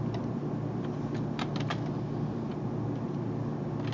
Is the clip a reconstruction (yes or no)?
no